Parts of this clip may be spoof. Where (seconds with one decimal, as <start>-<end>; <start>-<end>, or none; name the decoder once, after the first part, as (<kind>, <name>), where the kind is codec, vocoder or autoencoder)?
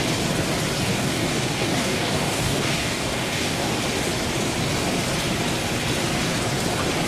0.9-3.7 (codec, DAC)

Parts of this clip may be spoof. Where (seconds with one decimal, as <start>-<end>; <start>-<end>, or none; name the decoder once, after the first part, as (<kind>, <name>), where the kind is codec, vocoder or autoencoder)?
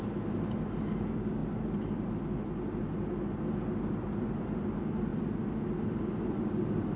none